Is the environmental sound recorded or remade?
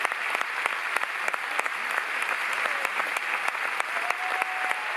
recorded